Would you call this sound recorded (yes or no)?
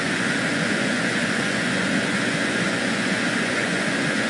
no